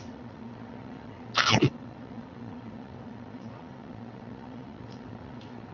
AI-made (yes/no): yes